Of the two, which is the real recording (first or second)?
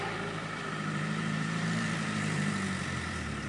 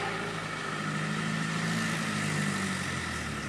second